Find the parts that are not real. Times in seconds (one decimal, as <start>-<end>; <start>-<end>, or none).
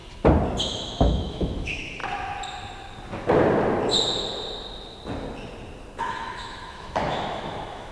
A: 0.6-2.0; 6.0-7.9